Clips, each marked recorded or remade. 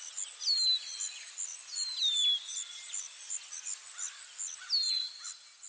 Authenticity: recorded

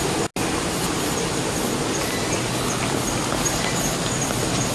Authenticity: recorded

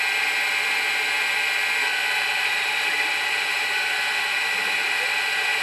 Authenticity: recorded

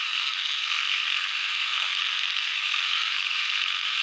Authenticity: remade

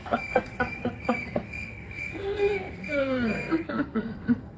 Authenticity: remade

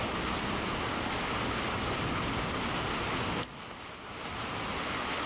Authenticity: recorded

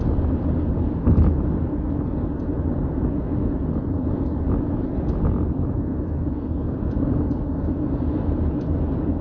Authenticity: recorded